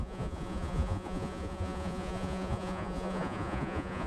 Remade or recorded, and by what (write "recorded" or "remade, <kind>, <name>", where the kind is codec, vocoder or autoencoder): remade, vocoder, Vocos